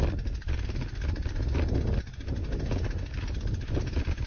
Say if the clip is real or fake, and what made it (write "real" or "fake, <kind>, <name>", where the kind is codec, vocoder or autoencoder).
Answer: real